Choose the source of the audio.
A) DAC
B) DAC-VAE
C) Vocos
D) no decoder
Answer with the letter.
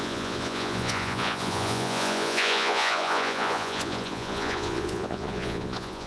C